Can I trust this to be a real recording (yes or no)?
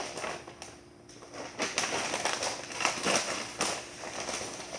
yes